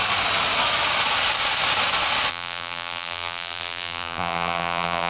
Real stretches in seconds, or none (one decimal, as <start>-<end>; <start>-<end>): 0.0-2.3